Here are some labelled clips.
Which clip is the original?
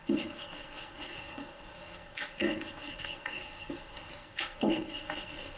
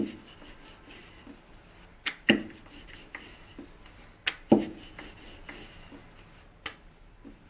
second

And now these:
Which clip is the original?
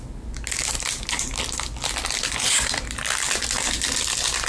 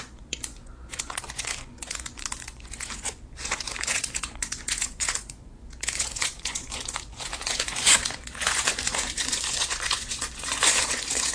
first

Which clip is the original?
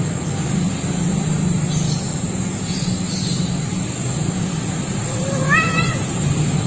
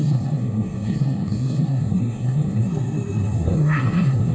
first